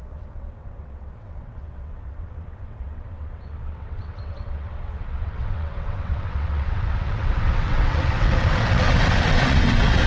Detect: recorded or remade remade